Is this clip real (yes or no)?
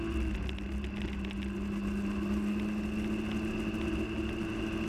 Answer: yes